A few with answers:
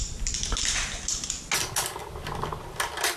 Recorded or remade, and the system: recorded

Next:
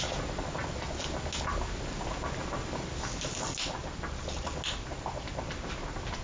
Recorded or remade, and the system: recorded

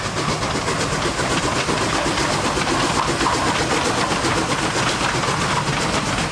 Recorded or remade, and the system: recorded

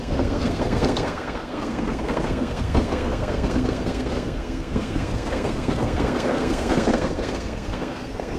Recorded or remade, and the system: remade, codec, SNAC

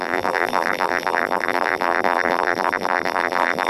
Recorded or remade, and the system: remade, vocoder, BigVGAN v2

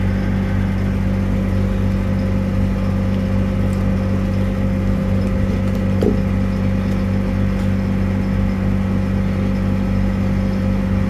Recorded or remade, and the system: recorded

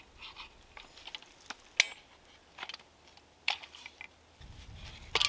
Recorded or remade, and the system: recorded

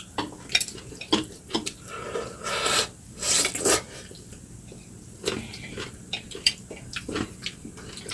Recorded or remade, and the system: remade, vocoder, BigVGAN v2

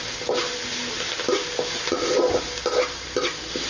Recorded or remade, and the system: recorded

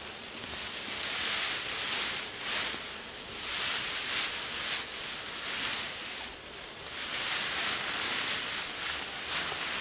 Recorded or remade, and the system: recorded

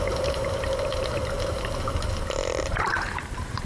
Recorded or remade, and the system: remade, vocoder, BigVGAN v2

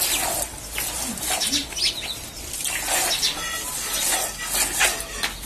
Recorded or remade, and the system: recorded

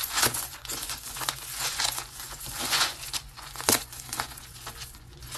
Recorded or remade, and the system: remade, vocoder, Vocos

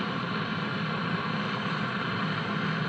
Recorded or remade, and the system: recorded